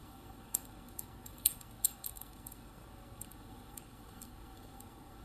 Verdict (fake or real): fake